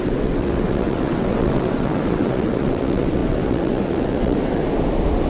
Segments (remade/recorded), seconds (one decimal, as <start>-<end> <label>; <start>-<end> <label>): 0.0-4.6 remade; 4.6-5.3 recorded